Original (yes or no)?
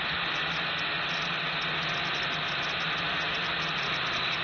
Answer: yes